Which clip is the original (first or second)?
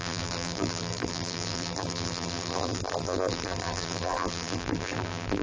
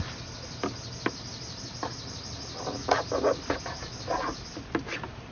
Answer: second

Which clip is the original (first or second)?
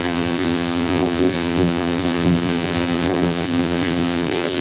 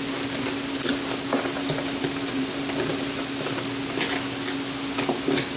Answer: second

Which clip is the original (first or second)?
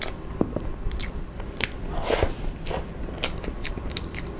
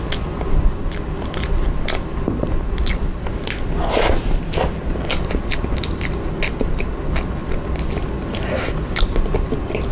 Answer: second